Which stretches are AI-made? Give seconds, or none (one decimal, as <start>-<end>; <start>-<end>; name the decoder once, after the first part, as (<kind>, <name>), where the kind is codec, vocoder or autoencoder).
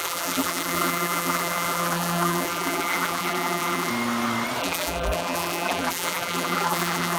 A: 0.0-3.9 (vocoder, BigVGAN v2); 4.6-7.2